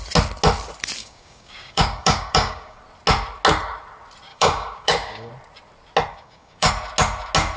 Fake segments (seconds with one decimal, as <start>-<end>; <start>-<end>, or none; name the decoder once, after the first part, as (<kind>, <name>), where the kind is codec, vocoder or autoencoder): 1.0-2.8 (codec, DAC); 4.3-5.3; 6.1-6.7